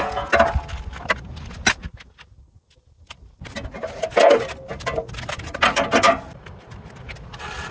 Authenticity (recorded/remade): recorded